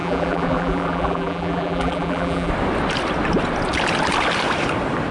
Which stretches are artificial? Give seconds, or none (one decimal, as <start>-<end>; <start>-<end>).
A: 0.0-2.5